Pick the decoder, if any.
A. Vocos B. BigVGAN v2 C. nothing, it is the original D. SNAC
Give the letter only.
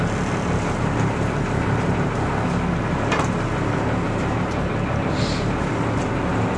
C